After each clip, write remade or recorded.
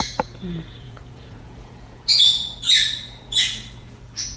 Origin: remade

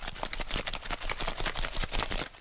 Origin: recorded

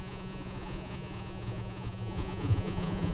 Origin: remade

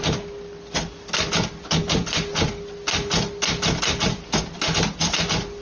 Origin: recorded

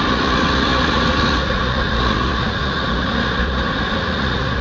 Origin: remade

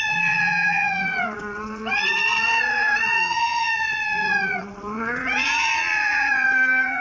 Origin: remade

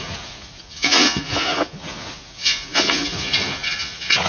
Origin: remade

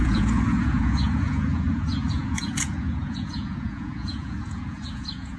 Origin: remade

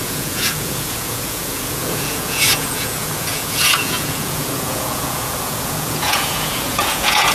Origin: remade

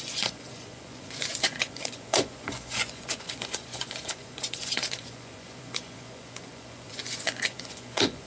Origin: remade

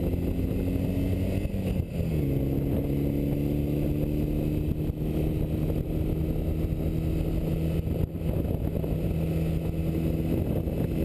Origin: recorded